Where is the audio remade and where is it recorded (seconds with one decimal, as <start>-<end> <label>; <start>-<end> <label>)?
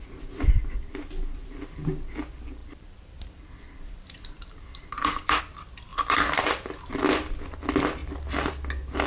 0.0-2.6 recorded; 2.6-5.4 remade; 5.4-5.9 recorded; 5.9-6.8 remade; 6.8-8.0 recorded; 8.0-8.5 remade; 8.5-9.1 recorded